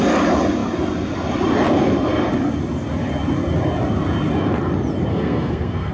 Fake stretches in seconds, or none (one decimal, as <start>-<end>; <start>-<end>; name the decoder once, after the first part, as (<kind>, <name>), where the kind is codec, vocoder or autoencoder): 5.1-5.9 (codec, SNAC)